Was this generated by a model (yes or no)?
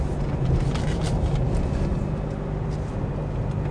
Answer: no